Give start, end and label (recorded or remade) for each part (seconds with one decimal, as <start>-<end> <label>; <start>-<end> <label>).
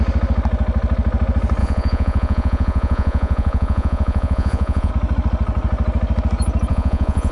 0.0-1.6 recorded; 1.6-4.9 remade; 4.9-6.7 recorded; 6.7-7.3 remade